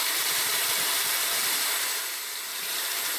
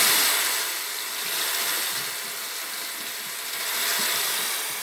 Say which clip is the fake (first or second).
first